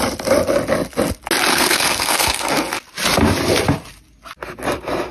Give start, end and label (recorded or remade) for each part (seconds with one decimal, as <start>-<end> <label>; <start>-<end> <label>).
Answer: 0.0-1.5 recorded; 1.5-2.5 remade; 2.5-5.1 recorded